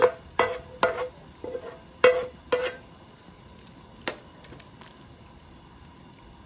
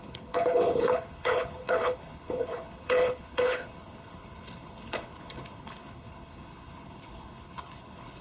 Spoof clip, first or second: second